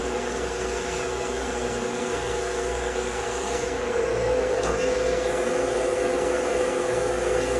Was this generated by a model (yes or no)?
yes